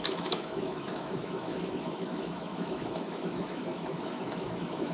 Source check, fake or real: fake